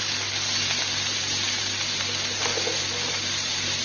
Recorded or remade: recorded